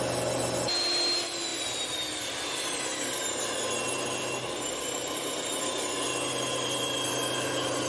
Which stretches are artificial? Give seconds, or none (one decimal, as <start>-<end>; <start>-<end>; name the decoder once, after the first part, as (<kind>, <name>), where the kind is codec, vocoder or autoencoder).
none